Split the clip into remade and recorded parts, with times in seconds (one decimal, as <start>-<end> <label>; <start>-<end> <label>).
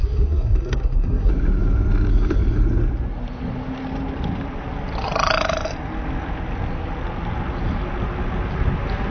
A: 0.0-1.3 remade; 1.3-9.1 recorded